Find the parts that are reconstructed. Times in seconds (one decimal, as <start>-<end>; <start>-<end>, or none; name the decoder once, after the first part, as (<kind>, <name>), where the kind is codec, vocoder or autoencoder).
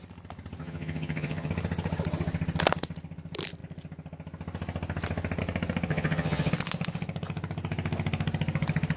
0.6-1.5 (vocoder, HiFi-GAN); 5.9-6.5